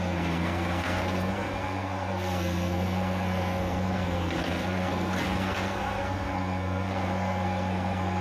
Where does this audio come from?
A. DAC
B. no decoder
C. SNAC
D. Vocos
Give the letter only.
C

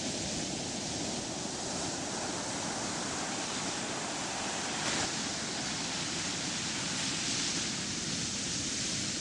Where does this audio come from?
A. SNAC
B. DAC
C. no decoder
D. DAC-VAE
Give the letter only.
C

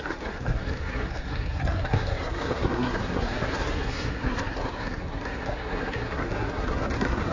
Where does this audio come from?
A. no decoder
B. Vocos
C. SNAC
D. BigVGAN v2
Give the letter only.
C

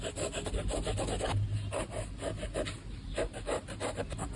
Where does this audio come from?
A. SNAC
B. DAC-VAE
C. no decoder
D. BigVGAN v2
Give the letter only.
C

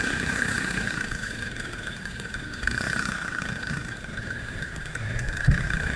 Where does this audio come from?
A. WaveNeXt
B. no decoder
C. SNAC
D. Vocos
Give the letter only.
C